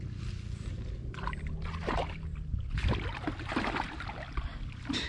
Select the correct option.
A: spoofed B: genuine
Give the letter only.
B